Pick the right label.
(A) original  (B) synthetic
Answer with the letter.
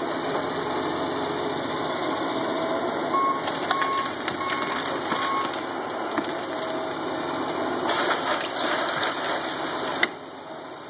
A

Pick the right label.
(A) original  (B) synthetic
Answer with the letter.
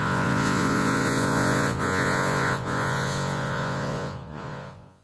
B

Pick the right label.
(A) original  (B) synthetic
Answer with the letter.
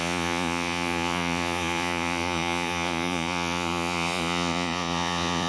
B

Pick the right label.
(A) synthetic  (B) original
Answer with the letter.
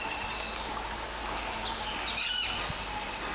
B